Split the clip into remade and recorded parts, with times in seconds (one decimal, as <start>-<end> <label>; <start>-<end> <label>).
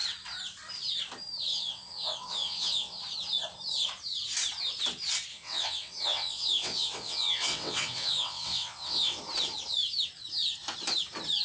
0.0-1.5 recorded; 1.5-3.0 remade; 3.0-5.3 recorded; 5.3-9.2 remade; 9.2-11.4 recorded